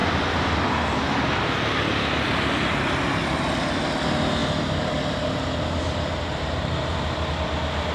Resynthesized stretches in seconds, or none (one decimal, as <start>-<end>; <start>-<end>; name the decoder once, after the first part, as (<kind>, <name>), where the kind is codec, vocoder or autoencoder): 0.0-1.4 (vocoder, BigVGAN v2); 4.4-6.4